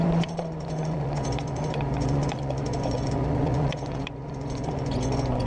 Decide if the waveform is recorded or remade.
remade